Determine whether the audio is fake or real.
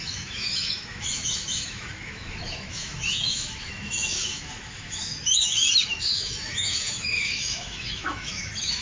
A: fake